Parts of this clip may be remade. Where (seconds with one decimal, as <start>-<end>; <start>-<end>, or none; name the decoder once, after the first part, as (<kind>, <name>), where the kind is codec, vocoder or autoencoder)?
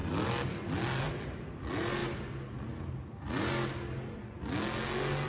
none